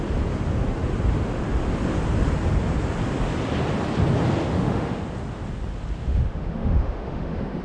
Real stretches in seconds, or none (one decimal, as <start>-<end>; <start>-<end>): 0.0-4.5; 5.0-6.0